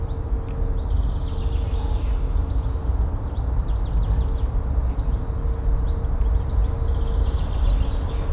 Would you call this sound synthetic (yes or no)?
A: no